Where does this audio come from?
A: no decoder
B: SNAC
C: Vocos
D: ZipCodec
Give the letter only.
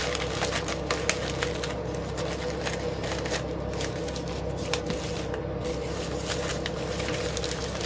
A